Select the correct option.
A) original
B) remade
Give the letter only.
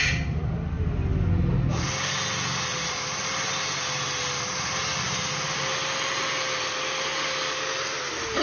A